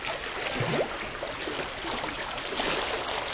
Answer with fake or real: real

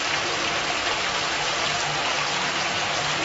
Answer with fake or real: real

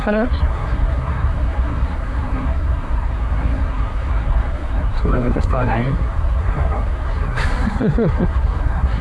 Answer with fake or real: fake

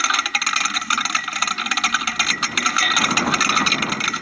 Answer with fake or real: real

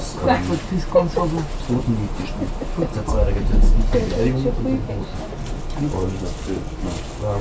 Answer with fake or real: real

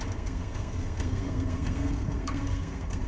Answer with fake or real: fake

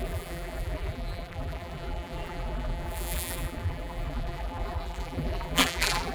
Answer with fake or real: fake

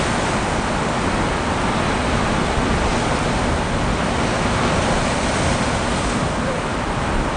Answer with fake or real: real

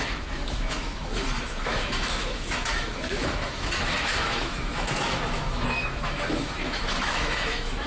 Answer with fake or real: fake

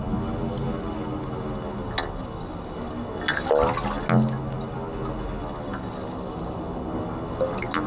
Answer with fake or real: real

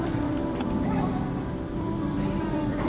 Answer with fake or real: fake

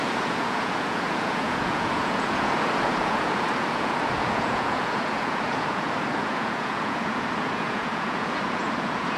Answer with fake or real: fake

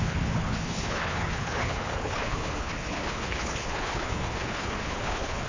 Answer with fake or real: fake